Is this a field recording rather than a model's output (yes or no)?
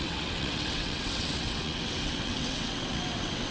no